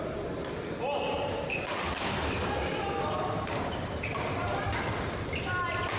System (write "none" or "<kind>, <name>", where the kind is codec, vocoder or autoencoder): none